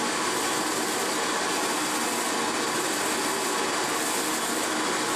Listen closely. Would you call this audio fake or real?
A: real